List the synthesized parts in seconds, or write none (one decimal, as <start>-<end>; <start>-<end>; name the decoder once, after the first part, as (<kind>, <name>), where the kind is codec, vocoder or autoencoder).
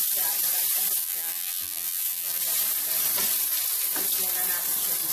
1.0-2.4 (vocoder, BigVGAN v2)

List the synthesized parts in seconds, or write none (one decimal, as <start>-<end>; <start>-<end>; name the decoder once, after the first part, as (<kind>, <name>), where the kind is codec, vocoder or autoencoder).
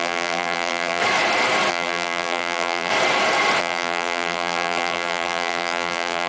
0.0-1.0 (vocoder, BigVGAN v2); 1.7-2.9; 3.6-6.3